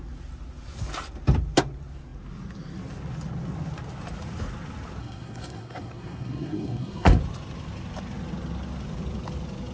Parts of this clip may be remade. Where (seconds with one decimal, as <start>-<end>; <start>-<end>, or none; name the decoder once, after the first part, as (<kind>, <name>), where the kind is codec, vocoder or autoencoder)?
5.0-7.2 (codec, SNAC)